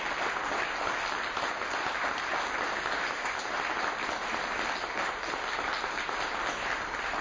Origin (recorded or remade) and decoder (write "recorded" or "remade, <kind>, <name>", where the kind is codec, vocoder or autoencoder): recorded